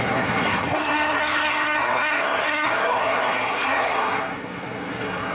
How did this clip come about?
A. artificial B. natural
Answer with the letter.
A